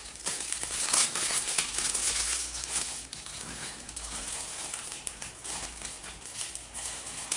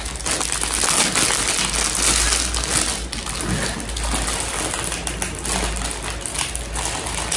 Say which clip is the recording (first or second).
second